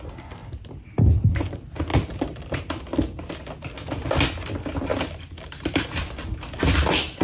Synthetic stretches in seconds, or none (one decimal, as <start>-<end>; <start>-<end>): 1.9-2.8; 4.9-7.2